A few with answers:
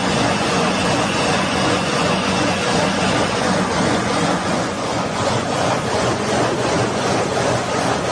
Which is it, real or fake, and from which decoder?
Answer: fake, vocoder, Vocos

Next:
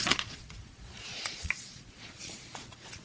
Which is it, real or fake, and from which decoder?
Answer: fake, vocoder, Vocos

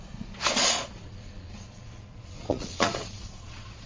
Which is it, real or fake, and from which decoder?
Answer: fake, vocoder, Vocos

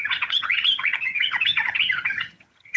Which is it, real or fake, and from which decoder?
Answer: fake, vocoder, HiFi-GAN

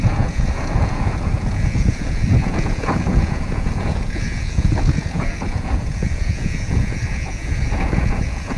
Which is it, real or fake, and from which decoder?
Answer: fake, vocoder, Vocos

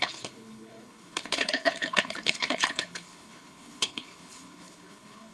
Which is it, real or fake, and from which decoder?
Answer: fake, codec, HILCodec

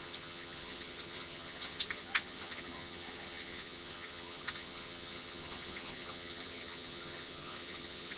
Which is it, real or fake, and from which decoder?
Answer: fake, vocoder, HiFi-GAN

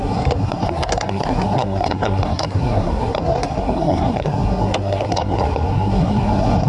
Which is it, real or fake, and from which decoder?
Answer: fake, codec, SNAC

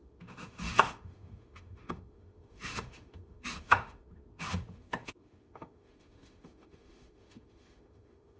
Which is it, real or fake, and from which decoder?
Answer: fake, autoencoder, DAC-VAE